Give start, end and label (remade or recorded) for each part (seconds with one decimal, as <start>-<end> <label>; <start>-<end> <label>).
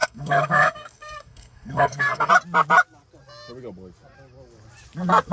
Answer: 0.0-2.3 remade; 2.3-5.3 recorded